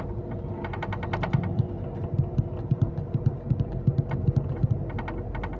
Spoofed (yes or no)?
no